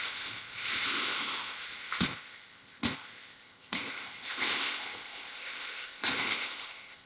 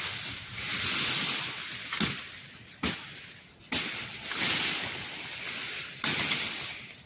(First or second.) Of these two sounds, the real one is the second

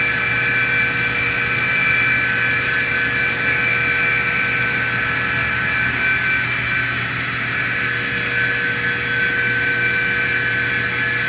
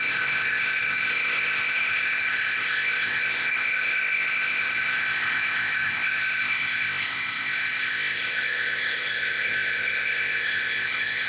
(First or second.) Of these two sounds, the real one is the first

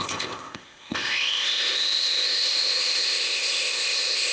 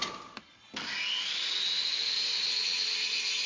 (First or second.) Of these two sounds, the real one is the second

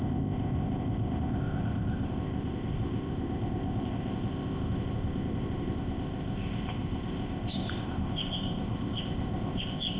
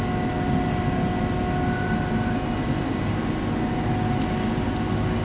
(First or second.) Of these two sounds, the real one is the second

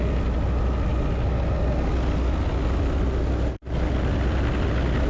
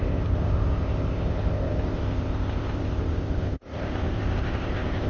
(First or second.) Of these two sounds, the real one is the first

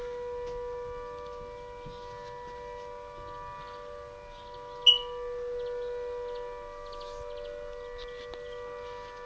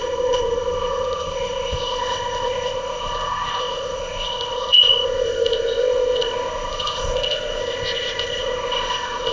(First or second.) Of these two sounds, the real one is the first